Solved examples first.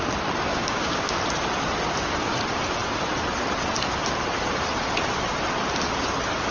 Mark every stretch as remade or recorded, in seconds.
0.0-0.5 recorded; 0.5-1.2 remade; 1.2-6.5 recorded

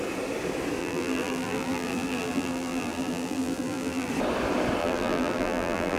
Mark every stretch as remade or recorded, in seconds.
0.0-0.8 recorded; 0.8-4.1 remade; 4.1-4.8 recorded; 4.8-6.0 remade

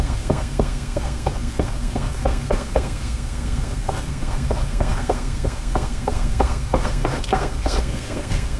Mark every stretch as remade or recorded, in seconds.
0.0-8.6 remade

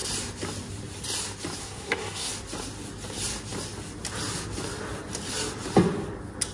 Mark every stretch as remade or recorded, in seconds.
0.0-1.6 recorded; 1.6-2.3 remade; 2.3-6.5 recorded

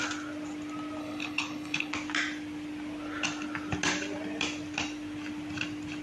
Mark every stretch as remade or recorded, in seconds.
0.0-1.0 recorded; 1.0-1.9 remade; 1.9-6.0 recorded

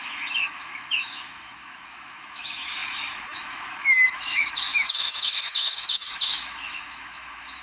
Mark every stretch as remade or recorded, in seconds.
0.0-7.6 remade

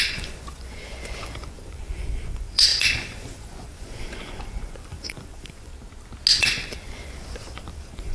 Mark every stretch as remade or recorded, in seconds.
0.0-5.7 remade; 5.7-6.4 recorded; 6.4-8.1 remade

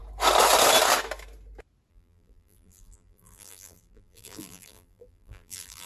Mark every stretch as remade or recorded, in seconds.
0.0-1.9 recorded; 1.9-5.9 remade